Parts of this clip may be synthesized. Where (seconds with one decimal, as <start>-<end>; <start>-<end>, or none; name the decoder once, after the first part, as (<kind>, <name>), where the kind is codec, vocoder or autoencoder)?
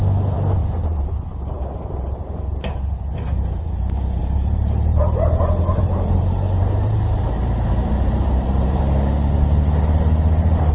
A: 0.6-1.6 (vocoder, BigVGAN v2); 4.2-8.8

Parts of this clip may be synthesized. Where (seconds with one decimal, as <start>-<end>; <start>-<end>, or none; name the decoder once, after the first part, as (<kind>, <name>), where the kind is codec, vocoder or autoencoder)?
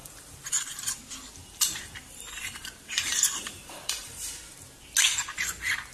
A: 0.0-0.9 (vocoder, BigVGAN v2); 1.4-4.5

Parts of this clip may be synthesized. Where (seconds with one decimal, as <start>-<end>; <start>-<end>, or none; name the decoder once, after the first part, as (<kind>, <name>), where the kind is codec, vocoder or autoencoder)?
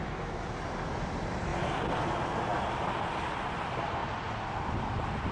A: 1.5-2.0 (vocoder, BigVGAN v2); 2.5-3.0; 4.0-5.3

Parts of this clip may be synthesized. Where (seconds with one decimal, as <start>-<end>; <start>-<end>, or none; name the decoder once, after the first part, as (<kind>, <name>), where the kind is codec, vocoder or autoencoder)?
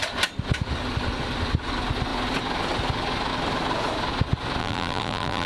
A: 4.6-5.5 (vocoder, BigVGAN v2)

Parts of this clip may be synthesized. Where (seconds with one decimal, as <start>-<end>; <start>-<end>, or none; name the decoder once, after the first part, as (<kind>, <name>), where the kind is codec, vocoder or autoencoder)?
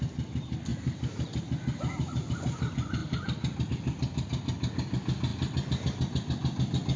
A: 0.7-2.3 (vocoder, BigVGAN v2); 3.0-3.7; 5.3-7.0